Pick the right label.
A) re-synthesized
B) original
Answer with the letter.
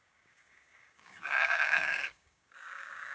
A